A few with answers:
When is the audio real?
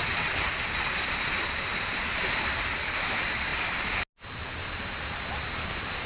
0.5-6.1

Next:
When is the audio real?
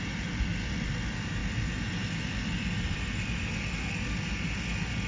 0.0-5.1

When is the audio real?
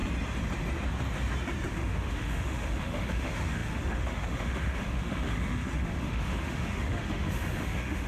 0.0-1.7